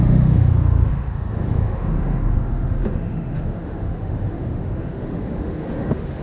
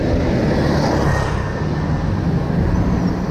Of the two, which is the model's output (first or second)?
first